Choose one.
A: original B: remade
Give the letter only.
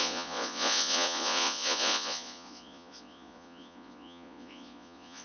B